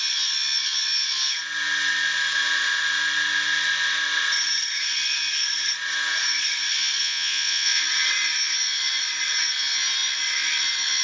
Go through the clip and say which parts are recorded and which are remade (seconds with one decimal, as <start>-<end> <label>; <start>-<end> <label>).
0.0-7.0 recorded; 7.0-7.8 remade; 7.8-11.0 recorded